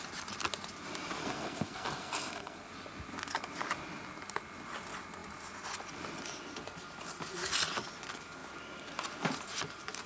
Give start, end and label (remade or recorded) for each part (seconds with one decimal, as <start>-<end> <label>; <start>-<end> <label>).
0.0-1.2 recorded; 1.2-2.6 remade; 2.6-10.1 recorded